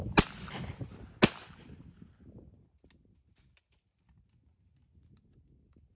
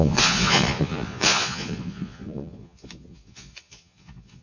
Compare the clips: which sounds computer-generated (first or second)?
second